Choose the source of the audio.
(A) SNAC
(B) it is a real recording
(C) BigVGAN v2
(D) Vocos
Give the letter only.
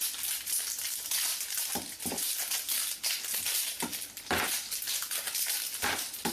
B